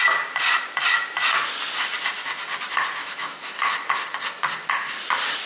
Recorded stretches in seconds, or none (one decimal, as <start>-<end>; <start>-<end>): 0.0-3.0; 3.7-5.5